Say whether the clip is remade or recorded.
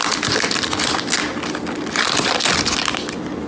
recorded